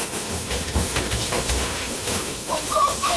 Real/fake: fake